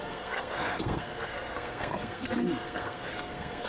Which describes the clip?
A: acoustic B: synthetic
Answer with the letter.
B